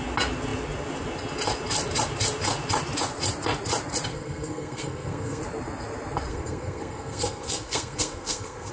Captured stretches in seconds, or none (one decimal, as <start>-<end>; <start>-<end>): 0.0-4.1; 5.4-6.3